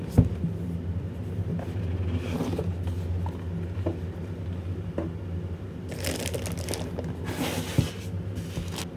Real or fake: real